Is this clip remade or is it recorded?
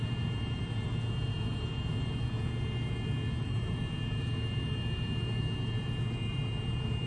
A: remade